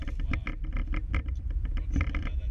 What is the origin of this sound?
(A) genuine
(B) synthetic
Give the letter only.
B